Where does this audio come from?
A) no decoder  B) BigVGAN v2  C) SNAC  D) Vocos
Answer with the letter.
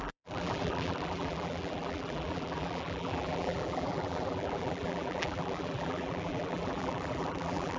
B